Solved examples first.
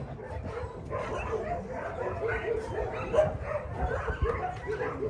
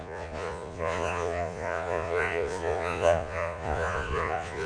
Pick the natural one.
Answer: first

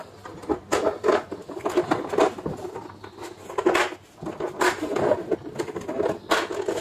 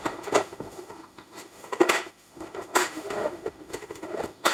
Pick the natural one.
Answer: first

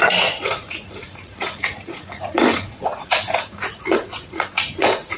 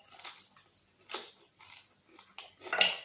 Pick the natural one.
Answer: second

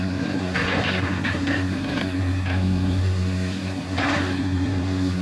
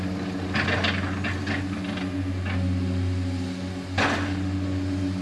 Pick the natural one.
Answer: second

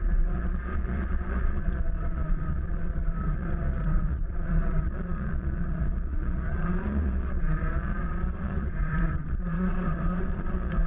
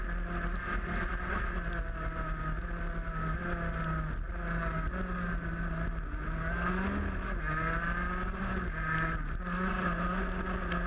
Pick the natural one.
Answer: second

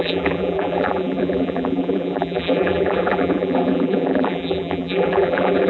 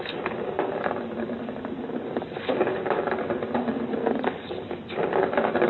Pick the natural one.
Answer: second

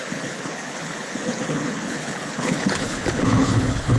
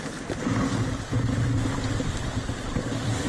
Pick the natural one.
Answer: second